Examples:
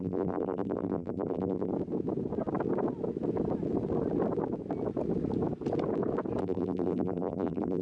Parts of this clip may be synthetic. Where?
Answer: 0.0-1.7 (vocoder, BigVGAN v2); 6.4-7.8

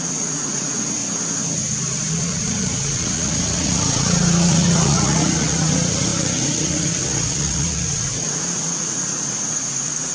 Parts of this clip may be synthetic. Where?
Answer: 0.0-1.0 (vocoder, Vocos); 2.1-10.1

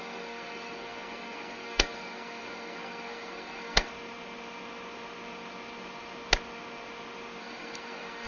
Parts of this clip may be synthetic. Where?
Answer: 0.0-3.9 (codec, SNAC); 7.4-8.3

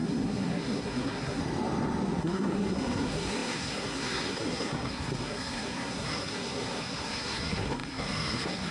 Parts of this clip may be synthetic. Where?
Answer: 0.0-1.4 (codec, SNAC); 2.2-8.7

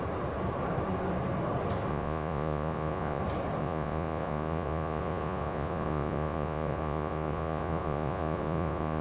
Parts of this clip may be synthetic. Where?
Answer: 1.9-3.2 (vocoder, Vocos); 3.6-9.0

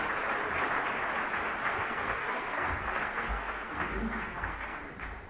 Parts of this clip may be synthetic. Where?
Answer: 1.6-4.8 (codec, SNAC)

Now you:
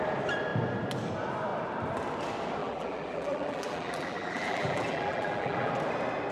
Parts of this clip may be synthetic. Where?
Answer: 2.6-5.7 (vocoder, BigVGAN v2)